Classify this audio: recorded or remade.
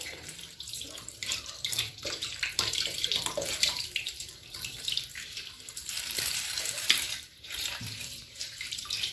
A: remade